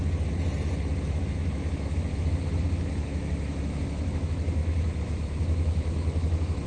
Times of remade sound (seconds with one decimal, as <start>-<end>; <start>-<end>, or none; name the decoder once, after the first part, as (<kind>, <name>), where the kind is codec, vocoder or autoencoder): 1.0-6.7 (autoencoder, DAC-VAE)